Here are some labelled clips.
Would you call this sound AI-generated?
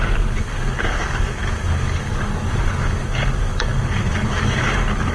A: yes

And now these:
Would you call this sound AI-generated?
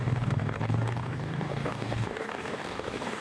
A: yes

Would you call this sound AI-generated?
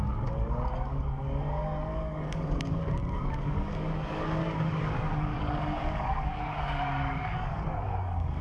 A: yes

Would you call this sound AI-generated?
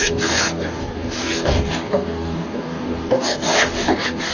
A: yes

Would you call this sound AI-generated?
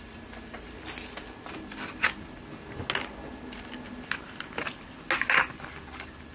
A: no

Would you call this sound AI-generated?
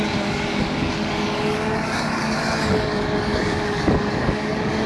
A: yes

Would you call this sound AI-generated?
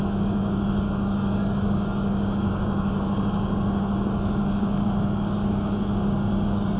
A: yes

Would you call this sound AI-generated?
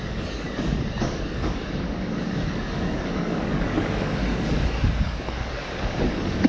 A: yes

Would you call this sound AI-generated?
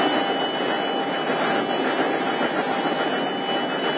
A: no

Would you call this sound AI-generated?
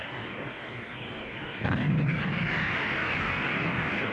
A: yes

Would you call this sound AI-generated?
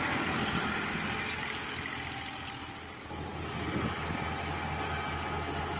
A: no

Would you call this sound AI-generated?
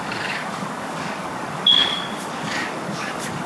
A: yes